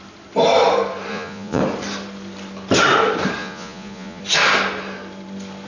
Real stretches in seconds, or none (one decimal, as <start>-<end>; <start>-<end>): 0.0-1.1; 1.6-3.4; 4.2-5.7